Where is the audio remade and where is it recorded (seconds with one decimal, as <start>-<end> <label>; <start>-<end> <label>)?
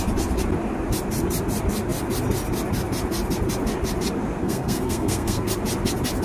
0.0-4.4 recorded; 4.4-5.5 remade; 5.5-6.2 recorded